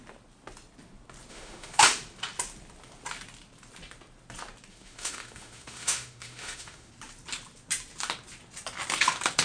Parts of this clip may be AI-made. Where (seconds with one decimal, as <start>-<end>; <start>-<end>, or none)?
1.3-1.8; 4.7-6.9